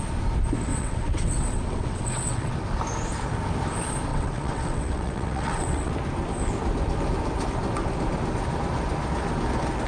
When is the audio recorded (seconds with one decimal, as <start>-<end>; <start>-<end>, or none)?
0.0-0.7; 2.5-4.1; 5.9-9.9

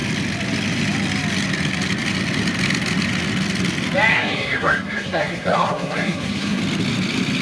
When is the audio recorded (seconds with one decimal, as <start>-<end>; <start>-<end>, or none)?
0.0-4.1; 6.6-7.4

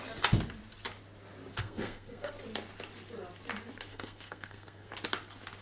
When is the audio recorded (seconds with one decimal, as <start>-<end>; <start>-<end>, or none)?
0.0-1.6; 2.3-3.9; 4.9-5.6

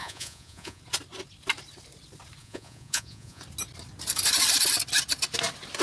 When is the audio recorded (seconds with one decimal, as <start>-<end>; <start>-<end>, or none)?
0.8-2.4; 3.4-5.8

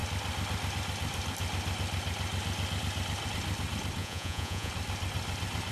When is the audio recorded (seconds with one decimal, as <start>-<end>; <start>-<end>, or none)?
0.0-4.0; 4.7-5.7